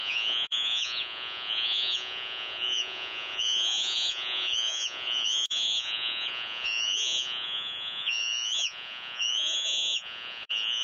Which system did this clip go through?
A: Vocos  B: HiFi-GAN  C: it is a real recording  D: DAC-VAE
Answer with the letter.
A